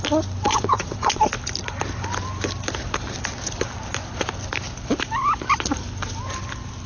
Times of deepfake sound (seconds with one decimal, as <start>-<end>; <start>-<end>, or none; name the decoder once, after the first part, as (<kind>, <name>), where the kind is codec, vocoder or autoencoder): 0.5-1.2 (vocoder, WaveNeXt)